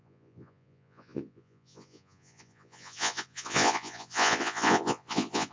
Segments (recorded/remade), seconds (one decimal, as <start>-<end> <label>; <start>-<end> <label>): 0.0-5.5 remade